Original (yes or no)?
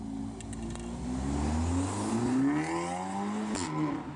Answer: yes